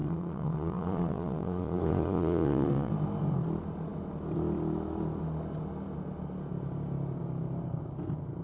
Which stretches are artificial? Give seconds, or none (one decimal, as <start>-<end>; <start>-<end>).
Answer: 0.0-2.9